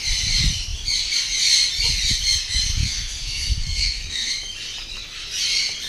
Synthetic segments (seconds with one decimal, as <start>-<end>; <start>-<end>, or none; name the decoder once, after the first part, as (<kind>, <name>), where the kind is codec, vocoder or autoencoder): 2.8-4.3 (codec, SNAC)